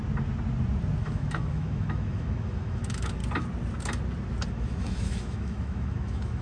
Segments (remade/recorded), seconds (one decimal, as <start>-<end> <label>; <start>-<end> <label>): 0.0-1.0 recorded; 1.0-3.2 remade; 3.2-4.5 recorded; 4.5-6.4 remade